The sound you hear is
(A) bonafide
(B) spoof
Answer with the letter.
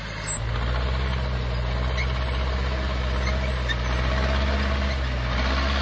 A